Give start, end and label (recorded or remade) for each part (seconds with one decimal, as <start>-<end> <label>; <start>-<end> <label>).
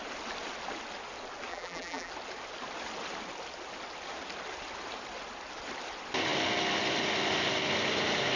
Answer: 0.0-1.5 recorded; 1.5-2.1 remade; 2.1-8.4 recorded